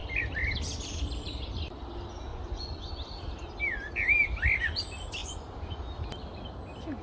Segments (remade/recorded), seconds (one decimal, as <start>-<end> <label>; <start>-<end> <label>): 0.0-2.3 recorded; 2.3-2.9 remade; 2.9-5.2 recorded; 5.2-5.8 remade; 5.8-7.0 recorded